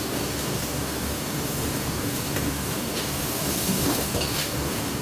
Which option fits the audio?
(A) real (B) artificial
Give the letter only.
B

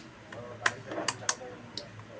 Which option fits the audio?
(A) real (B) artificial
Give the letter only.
A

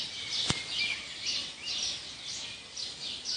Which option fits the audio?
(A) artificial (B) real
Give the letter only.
B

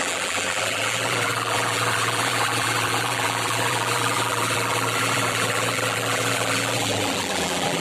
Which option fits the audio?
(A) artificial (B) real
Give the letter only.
A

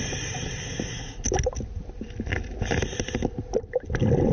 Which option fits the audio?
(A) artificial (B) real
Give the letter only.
B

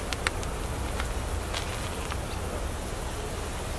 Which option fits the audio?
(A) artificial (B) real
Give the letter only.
B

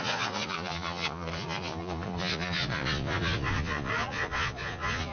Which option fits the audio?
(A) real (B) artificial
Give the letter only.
B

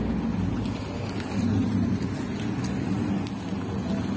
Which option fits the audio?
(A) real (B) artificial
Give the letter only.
A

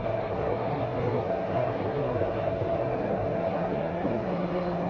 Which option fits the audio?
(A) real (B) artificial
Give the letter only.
B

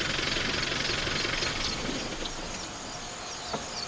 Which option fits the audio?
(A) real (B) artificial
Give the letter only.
A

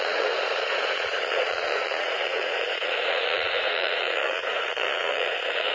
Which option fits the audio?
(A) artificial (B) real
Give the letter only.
A